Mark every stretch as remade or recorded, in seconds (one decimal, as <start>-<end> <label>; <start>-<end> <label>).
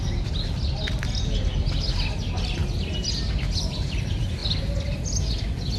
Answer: 0.0-5.8 recorded